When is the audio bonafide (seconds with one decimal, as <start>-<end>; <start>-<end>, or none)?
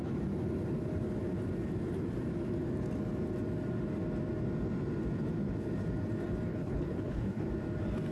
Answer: 0.0-6.5; 7.5-8.1